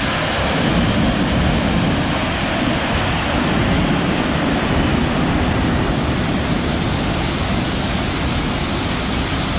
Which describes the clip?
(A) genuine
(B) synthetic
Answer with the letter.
A